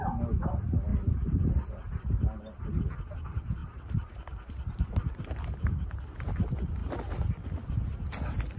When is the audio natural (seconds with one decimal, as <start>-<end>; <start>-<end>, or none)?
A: 0.0-3.6; 4.9-8.6